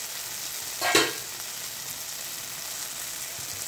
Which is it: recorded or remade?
recorded